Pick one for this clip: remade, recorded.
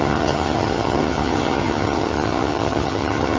remade